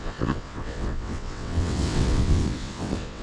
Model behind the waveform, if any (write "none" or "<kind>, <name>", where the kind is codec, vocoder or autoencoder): vocoder, WaveNeXt